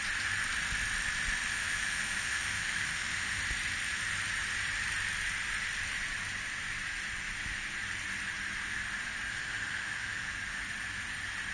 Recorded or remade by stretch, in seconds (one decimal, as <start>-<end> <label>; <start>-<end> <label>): 0.0-1.5 recorded; 1.5-3.4 remade; 3.4-9.3 recorded; 9.3-10.3 remade; 10.3-11.5 recorded